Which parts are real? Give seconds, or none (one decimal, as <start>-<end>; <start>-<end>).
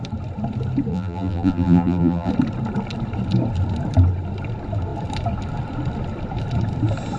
0.0-0.9; 2.3-7.2